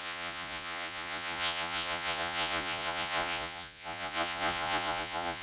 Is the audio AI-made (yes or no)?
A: yes